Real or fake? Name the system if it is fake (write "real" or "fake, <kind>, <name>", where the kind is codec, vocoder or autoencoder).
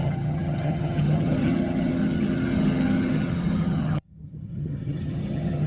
fake, vocoder, HiFi-GAN